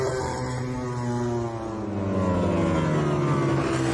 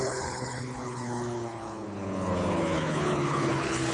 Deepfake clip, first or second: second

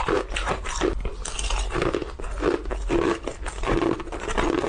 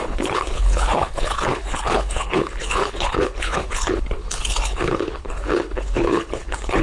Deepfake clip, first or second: second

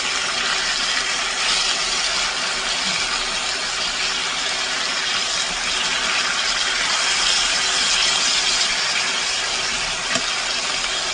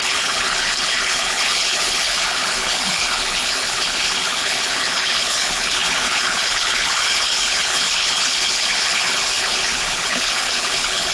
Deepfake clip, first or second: second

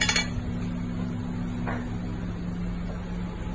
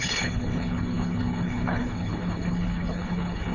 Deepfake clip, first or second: second